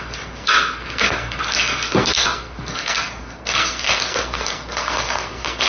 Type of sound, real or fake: fake